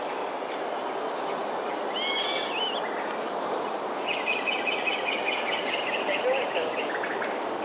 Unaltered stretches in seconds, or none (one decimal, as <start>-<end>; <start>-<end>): 0.0-7.6